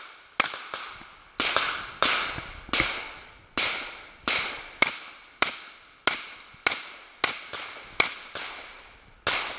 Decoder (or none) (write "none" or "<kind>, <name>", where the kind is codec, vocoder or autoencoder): none